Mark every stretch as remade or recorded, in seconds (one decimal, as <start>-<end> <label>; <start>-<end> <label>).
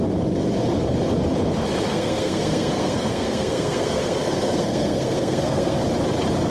0.0-1.9 recorded; 1.9-5.8 remade; 5.8-6.5 recorded